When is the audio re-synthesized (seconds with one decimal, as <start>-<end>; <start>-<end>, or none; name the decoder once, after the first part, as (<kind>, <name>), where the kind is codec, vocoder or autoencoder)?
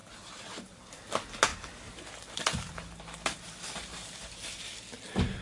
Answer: 0.0-1.0 (vocoder, BigVGAN v2); 1.5-4.7